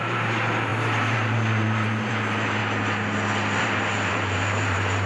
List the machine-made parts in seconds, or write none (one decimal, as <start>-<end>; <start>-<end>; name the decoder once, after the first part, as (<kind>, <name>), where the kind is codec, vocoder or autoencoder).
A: 0.0-2.6 (vocoder, BigVGAN v2); 3.6-5.1